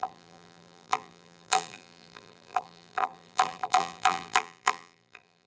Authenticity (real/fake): fake